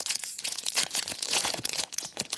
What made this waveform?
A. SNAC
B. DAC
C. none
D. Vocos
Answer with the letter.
D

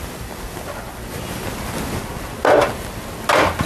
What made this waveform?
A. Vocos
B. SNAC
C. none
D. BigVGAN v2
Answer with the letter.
C